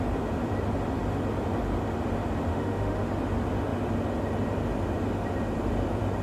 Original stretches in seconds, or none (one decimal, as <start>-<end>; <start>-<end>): 0.0-2.5; 3.1-6.2